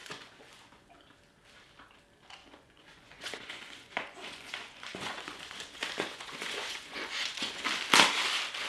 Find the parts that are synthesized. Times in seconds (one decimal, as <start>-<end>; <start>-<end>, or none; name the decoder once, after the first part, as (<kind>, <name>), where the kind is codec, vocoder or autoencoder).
0.0-0.9 (vocoder, Vocos); 2.4-7.6